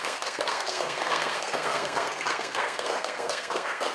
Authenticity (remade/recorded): remade